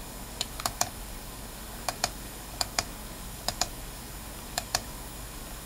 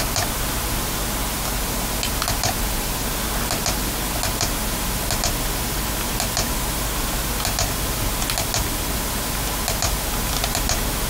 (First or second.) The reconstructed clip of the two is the first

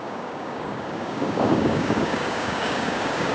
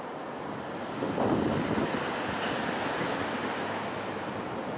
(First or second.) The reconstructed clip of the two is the first